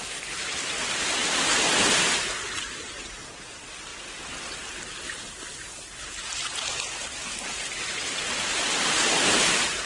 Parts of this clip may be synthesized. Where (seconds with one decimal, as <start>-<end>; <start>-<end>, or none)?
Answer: none

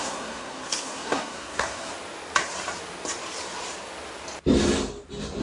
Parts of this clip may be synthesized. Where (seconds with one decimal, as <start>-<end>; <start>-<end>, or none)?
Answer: 0.0-1.9

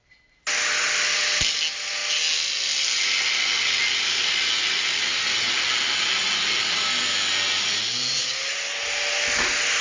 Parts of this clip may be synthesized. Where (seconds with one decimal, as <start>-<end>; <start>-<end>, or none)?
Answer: none